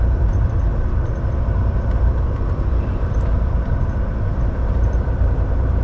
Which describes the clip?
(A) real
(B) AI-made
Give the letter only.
B